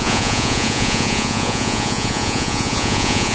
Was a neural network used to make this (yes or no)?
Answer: yes